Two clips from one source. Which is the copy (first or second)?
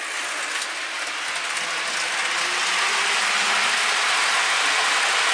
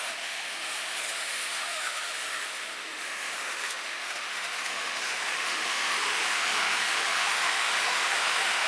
second